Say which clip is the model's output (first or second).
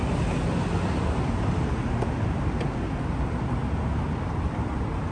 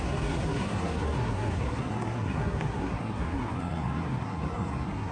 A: second